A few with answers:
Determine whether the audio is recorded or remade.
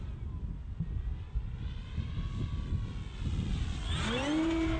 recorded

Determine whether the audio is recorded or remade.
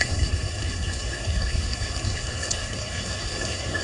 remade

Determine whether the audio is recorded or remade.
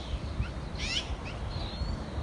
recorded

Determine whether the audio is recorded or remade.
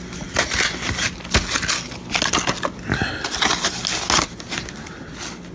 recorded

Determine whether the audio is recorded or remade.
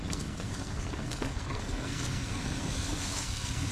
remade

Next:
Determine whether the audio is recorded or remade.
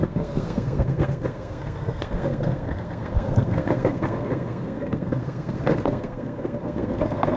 remade